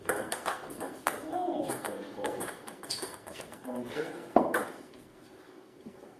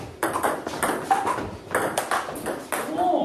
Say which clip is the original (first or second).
second